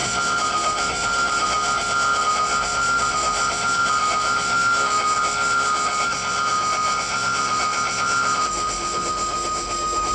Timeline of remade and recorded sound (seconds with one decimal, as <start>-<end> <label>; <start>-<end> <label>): 0.0-10.1 remade